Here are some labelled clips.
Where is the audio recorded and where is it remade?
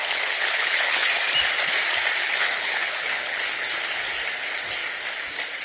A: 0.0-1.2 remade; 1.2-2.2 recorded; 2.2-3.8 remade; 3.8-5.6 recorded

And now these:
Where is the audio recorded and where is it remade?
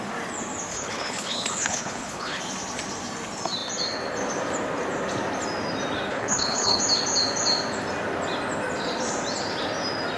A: 0.0-0.7 recorded; 0.7-2.4 remade; 2.4-6.1 recorded; 6.1-6.8 remade; 6.8-10.2 recorded